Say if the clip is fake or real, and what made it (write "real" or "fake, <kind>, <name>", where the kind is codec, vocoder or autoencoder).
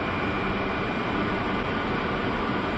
real